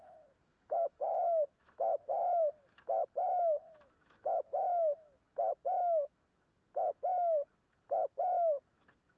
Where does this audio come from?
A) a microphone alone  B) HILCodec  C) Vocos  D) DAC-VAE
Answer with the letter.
D